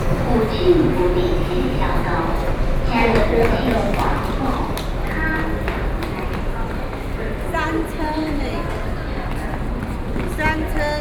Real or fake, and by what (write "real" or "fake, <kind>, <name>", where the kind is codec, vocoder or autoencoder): real